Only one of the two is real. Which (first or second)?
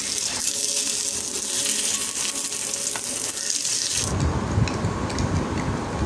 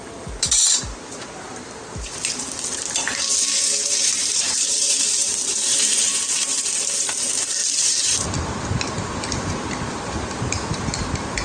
first